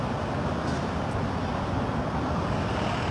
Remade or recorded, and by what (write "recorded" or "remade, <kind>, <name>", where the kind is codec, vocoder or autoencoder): recorded